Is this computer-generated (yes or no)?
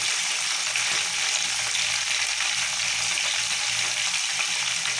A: no